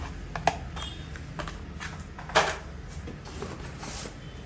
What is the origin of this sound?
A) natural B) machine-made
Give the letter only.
A